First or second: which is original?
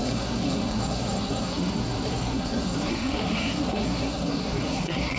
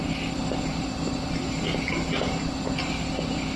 second